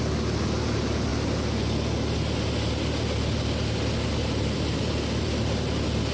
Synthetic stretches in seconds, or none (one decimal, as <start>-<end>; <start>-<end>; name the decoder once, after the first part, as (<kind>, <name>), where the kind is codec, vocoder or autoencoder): none